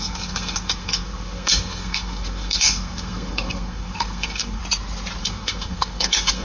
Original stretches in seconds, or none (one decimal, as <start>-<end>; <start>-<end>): 4.6-5.2